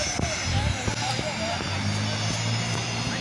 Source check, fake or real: real